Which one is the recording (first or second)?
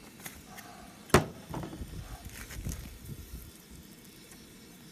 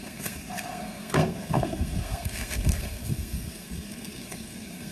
first